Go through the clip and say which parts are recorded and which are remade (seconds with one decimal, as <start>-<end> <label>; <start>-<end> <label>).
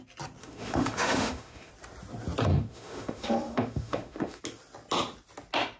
0.0-0.4 recorded; 0.4-1.7 remade; 1.7-2.5 recorded; 2.5-4.4 remade; 4.4-5.8 recorded